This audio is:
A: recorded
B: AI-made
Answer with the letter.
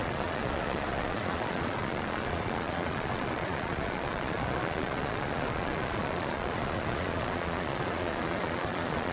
B